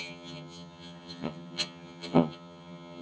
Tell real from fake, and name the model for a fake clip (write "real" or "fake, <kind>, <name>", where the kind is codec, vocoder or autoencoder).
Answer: fake, vocoder, HiFi-GAN